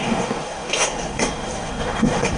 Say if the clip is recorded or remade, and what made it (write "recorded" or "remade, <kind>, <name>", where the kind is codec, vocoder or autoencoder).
remade, codec, SNAC